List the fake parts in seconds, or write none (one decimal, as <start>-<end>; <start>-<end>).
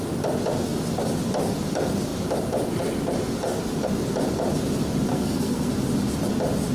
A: 5.1-5.7